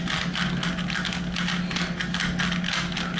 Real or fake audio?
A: real